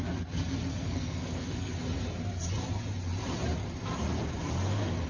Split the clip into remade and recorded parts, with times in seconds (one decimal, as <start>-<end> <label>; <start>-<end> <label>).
0.0-0.7 recorded; 0.7-1.8 remade; 1.8-5.1 recorded